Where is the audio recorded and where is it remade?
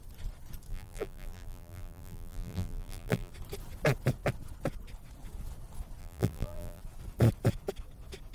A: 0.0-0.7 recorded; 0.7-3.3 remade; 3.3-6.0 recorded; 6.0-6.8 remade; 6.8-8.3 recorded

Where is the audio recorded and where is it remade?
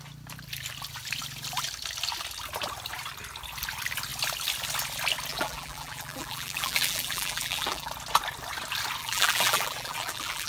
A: 0.0-5.3 recorded; 5.3-7.9 remade; 7.9-9.0 recorded; 9.0-10.5 remade